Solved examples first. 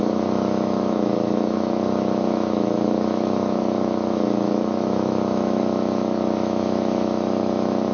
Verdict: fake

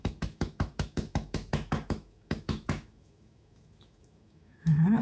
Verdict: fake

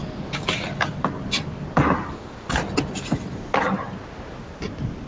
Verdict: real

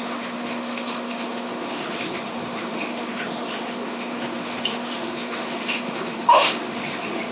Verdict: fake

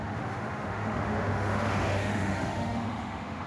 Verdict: fake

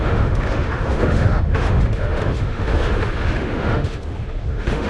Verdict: fake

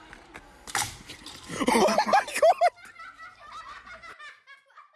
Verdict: real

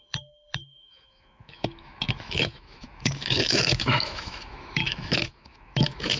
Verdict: fake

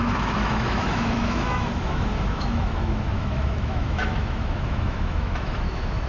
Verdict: fake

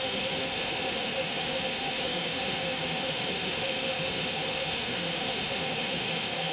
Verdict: fake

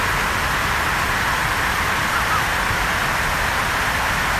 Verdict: real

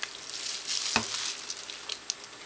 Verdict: real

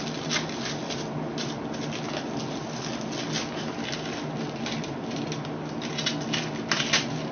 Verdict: real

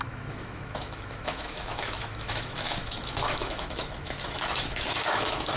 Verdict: fake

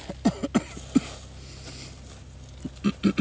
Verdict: real